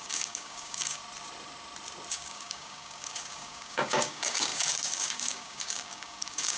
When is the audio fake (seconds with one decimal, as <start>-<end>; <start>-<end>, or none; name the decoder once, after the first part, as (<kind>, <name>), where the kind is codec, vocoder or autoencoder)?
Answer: 0.0-1.0 (codec, DAC); 2.1-6.6